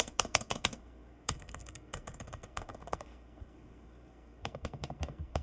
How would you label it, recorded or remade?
remade